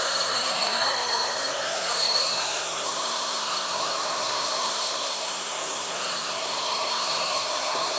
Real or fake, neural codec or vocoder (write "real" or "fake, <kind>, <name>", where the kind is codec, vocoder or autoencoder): fake, codec, SNAC